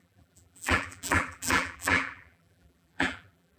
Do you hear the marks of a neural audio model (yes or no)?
yes